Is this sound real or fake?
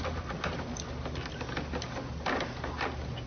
real